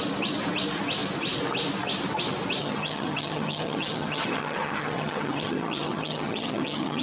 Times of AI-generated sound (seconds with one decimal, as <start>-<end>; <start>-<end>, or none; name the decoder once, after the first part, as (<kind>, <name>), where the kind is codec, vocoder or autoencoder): 2.6-7.0 (vocoder, HiFi-GAN)